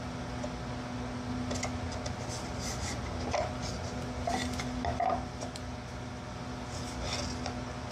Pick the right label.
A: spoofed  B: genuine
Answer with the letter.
B